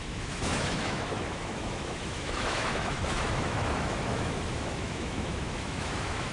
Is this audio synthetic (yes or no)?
yes